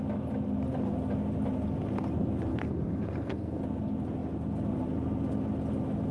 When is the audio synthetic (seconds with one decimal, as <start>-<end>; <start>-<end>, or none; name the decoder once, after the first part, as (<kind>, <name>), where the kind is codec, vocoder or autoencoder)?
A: 2.5-3.6 (codec, SNAC)